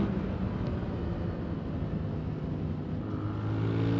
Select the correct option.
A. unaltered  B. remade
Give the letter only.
A